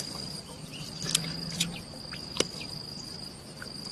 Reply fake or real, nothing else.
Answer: real